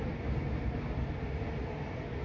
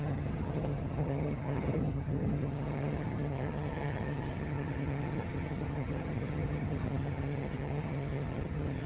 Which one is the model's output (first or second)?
second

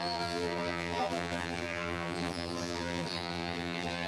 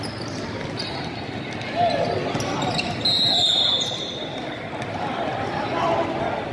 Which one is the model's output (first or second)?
first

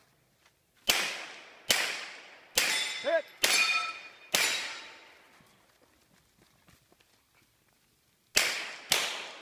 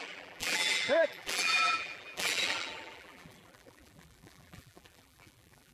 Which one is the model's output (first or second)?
second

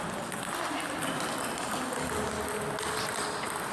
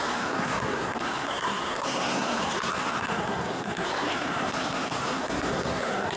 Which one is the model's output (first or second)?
second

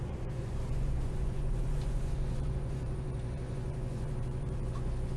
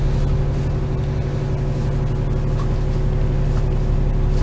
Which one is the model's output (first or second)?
first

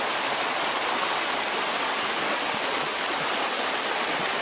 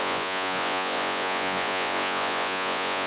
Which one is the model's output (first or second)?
second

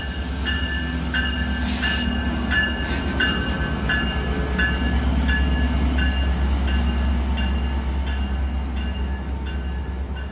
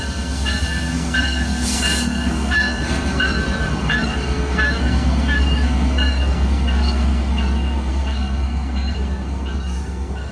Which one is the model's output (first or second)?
second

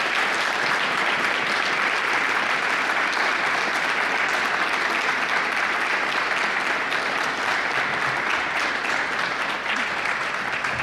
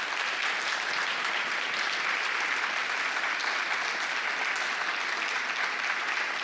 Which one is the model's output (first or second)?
first